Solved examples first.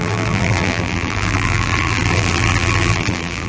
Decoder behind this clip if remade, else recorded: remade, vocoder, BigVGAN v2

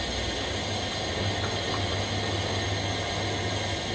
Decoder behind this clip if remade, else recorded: recorded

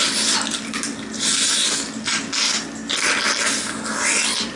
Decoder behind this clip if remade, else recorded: recorded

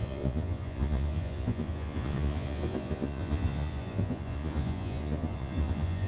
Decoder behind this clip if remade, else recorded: remade, vocoder, Vocos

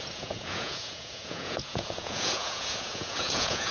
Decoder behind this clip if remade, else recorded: remade, vocoder, Vocos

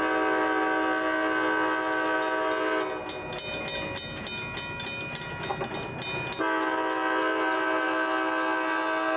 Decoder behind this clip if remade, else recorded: recorded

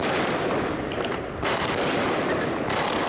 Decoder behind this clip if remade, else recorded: recorded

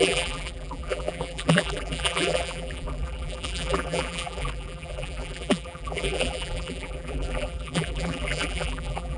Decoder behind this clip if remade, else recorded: remade, vocoder, BigVGAN v2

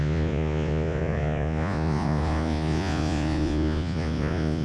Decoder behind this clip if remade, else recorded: remade, vocoder, Vocos